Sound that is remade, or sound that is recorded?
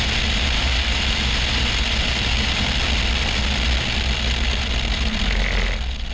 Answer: recorded